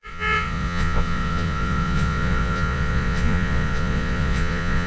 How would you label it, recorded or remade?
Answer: remade